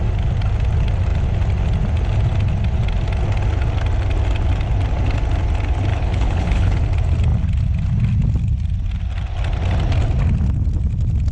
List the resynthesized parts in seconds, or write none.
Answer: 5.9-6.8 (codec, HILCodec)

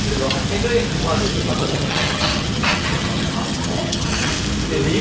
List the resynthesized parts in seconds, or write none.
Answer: 1.3-4.3 (vocoder, HiFi-GAN)

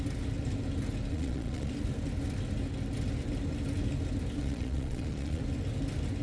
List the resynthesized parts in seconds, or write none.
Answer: 1.1-1.7 (vocoder, Vocos); 4.4-5.4

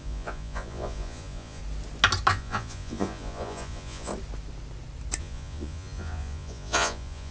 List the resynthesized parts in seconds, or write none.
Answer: 0.0-1.6 (vocoder, Vocos); 2.3-4.1; 5.2-7.3

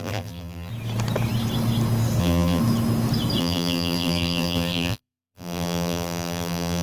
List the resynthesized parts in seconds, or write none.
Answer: 0.0-0.7 (vocoder, BigVGAN v2); 2.2-2.6; 3.4-6.8

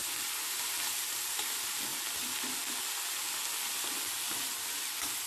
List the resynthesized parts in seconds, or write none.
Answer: 1.9-5.3 (vocoder, BigVGAN v2)

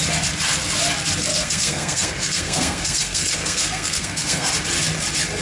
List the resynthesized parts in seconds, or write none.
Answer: 1.3-4.5 (codec, SNAC)